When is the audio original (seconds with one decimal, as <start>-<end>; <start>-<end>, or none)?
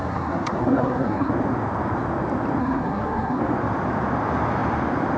1.3-2.6; 3.4-5.2